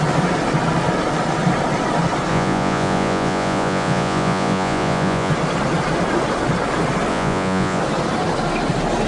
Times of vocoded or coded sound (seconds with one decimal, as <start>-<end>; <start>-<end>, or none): 2.3-5.3; 7.1-7.8